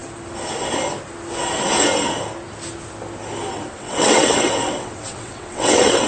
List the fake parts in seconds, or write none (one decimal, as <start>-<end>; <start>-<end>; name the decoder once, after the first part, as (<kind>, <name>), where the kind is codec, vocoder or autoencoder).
3.7-6.1 (vocoder, WaveNeXt)